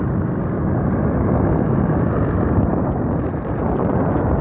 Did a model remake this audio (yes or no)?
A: no